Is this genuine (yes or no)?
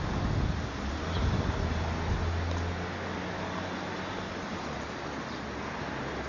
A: yes